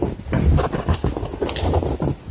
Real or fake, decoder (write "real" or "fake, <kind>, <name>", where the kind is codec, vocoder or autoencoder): real